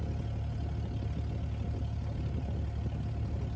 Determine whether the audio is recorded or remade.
recorded